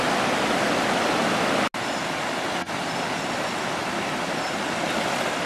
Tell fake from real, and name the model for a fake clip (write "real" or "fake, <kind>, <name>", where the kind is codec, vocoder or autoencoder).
real